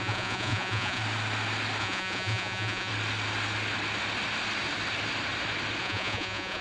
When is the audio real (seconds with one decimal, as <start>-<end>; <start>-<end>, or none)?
1.0-1.8; 2.9-5.8

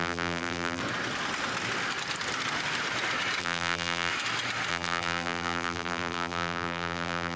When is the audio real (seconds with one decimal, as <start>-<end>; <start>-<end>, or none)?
0.8-3.4; 4.1-4.7